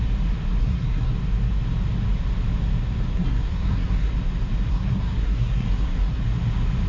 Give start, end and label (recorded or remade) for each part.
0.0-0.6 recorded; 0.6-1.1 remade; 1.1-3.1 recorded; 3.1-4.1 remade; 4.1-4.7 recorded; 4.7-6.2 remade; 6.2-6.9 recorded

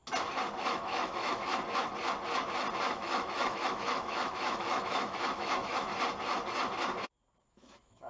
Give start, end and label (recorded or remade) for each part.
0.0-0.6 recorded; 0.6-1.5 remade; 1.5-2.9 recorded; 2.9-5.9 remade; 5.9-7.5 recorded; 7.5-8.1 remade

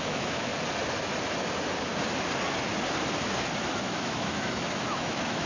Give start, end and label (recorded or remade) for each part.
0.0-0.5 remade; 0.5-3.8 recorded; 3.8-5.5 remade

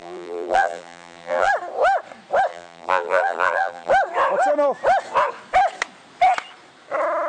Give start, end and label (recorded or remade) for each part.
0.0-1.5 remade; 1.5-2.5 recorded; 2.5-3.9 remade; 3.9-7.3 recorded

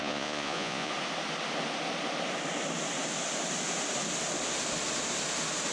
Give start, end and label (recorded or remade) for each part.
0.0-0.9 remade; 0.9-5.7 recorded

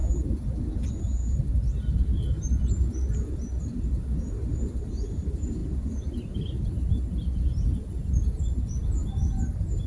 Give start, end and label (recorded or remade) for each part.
0.0-9.9 recorded